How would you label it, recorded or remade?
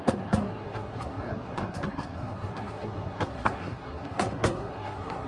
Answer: remade